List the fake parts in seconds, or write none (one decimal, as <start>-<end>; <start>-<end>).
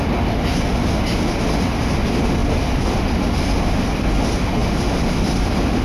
2.4-3.0; 4.6-5.8